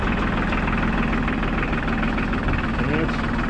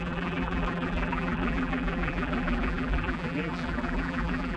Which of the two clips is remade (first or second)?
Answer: second